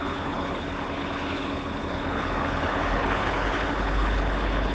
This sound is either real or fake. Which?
fake